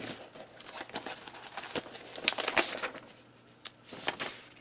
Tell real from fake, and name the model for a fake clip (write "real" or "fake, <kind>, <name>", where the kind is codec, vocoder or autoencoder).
real